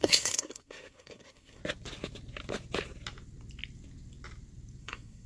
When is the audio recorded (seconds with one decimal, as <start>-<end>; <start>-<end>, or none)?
1.6-4.8